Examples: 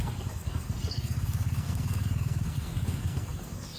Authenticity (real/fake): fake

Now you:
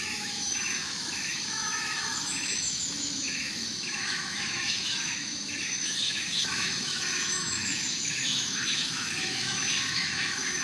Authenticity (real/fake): fake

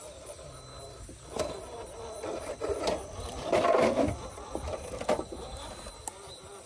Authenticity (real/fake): real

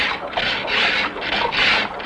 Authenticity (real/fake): real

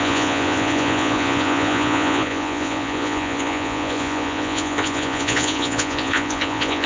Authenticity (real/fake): fake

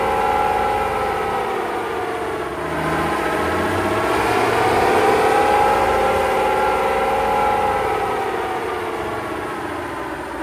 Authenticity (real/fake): real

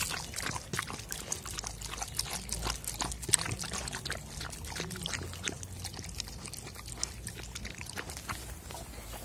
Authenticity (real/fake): real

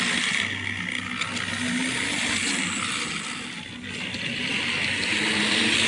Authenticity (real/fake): real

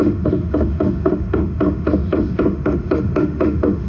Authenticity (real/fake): fake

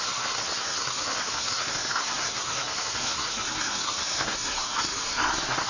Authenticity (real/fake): fake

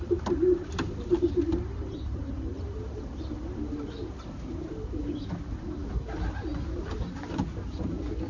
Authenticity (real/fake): real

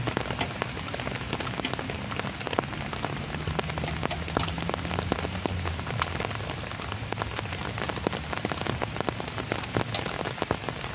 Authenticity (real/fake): real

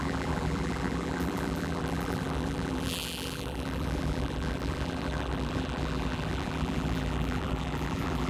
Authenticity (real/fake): fake